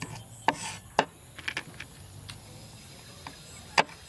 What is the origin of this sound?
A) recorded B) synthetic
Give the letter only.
A